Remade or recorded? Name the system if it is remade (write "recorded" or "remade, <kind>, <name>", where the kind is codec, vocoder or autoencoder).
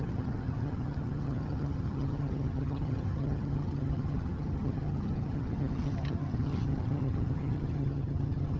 remade, vocoder, HiFi-GAN